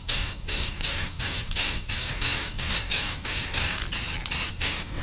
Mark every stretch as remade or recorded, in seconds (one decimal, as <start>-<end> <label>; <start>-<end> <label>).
0.0-3.8 remade; 3.8-4.5 recorded; 4.5-5.0 remade

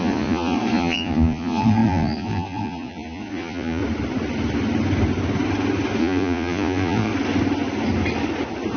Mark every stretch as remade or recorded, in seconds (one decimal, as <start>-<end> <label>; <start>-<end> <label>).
0.0-3.8 remade; 3.8-6.0 recorded; 6.0-7.1 remade; 7.1-8.8 recorded